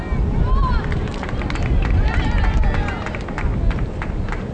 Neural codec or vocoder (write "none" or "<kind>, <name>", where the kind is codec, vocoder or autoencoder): none